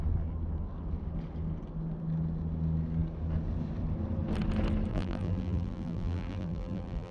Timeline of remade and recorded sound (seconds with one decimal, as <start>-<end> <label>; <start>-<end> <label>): 0.0-4.9 recorded; 4.9-7.1 remade